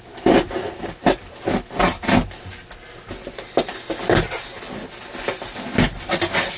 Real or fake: real